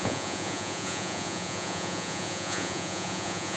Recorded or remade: remade